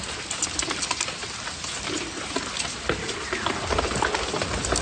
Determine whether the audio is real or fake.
real